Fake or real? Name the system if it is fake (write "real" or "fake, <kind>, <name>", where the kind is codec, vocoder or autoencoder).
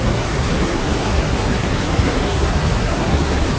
fake, codec, SNAC